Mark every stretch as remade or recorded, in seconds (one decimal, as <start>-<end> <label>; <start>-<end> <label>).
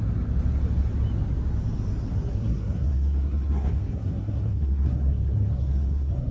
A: 0.0-2.1 recorded; 2.1-6.3 remade